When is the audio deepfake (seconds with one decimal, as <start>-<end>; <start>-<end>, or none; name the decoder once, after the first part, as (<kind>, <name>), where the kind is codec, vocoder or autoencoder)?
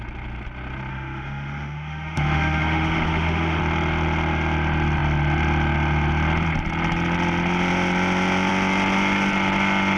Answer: 0.9-3.6 (autoencoder, DAC-VAE)